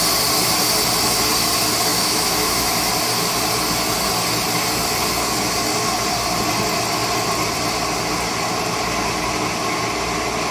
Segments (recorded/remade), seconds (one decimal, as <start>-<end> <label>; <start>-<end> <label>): 0.0-1.9 recorded; 1.9-2.9 remade; 2.9-10.5 recorded

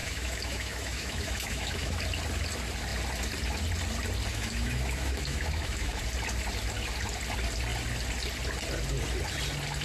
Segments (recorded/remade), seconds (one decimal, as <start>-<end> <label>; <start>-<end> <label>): 0.0-2.0 remade; 2.0-4.3 recorded; 4.3-6.0 remade; 6.0-9.8 recorded

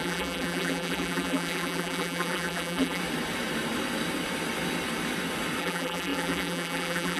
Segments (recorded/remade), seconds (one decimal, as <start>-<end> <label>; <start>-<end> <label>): 0.0-3.0 remade; 3.0-5.6 recorded; 5.6-7.2 remade

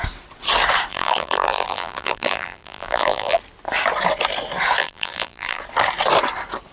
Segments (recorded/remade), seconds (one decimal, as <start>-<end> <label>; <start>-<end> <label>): 0.0-0.9 recorded; 0.9-3.4 remade; 3.4-4.8 recorded; 4.8-5.6 remade; 5.6-6.7 recorded

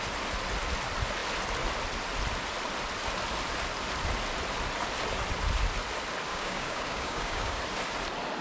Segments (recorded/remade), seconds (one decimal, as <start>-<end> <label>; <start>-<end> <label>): 0.0-6.3 recorded; 6.3-7.6 remade; 7.6-8.4 recorded

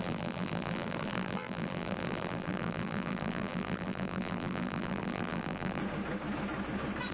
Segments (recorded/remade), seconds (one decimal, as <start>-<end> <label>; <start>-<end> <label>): 0.0-5.8 remade; 5.8-7.1 recorded

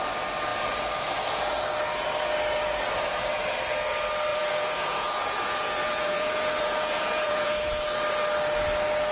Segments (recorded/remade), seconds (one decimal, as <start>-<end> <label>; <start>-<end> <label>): 0.0-4.3 recorded; 4.3-7.5 remade; 7.5-9.1 recorded

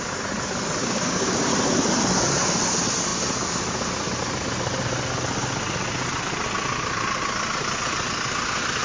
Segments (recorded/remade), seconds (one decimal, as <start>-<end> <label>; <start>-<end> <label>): 0.0-0.8 recorded; 0.8-1.5 remade; 1.5-8.8 recorded